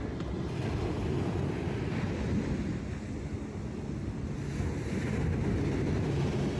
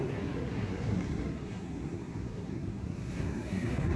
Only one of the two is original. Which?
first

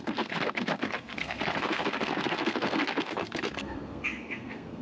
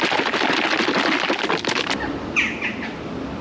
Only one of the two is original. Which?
second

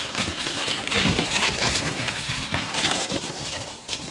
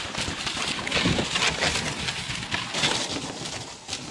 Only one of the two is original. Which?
second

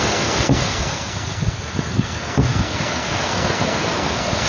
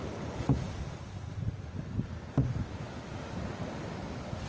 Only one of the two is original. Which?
second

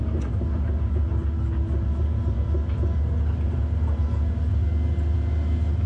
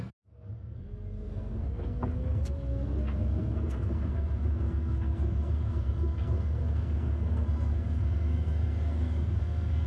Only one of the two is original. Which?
first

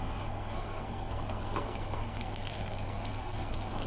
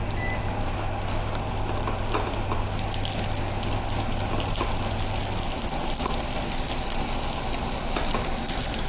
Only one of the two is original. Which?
second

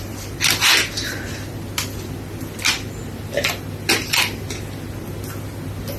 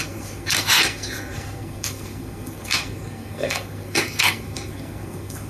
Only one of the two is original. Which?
first